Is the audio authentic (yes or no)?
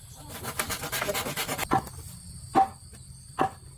yes